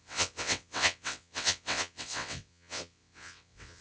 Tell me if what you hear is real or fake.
fake